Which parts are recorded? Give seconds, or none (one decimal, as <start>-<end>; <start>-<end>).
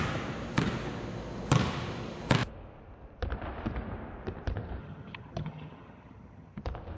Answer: 0.0-4.8; 6.6-7.0